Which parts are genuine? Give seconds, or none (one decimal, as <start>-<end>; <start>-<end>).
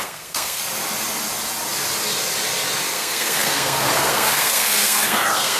0.6-2.9